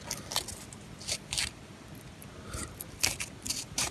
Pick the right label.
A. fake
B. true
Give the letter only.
B